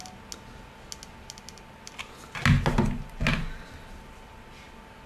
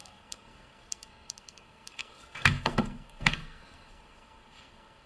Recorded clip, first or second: first